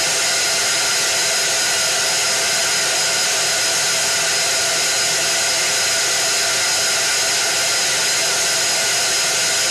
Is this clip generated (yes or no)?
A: no